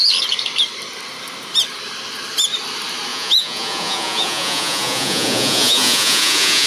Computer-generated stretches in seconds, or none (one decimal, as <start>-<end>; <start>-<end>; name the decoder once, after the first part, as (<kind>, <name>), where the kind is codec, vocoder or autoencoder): 3.1-6.7 (vocoder, Vocos)